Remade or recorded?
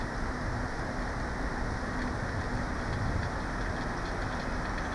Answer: recorded